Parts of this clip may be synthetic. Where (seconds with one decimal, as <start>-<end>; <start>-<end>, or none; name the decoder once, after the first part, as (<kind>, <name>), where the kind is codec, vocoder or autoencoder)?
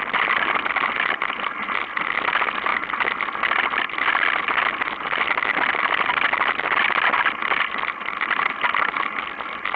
none